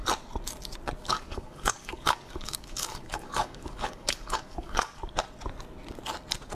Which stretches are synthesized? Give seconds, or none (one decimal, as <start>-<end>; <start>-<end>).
1.0-4.9